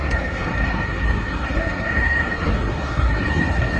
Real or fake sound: fake